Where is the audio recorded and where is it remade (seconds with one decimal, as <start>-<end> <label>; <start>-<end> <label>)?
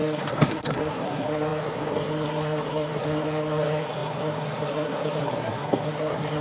0.0-6.4 remade